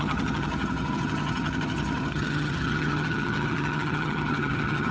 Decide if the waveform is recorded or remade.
remade